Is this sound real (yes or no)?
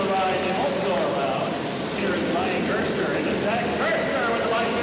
yes